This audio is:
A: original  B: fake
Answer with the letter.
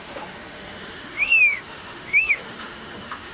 B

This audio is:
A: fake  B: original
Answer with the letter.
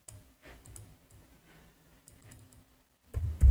A